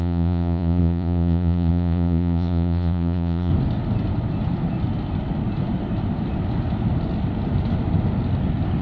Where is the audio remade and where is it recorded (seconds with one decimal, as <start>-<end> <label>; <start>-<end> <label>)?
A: 0.0-3.5 remade; 3.5-8.8 recorded